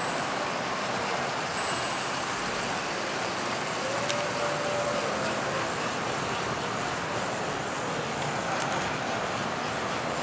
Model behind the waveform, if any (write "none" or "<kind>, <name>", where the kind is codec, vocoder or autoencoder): none